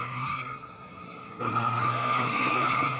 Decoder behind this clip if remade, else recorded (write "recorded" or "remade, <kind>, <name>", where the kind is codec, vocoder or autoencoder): remade, codec, SNAC